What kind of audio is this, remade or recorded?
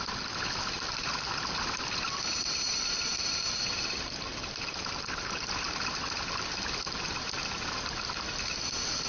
recorded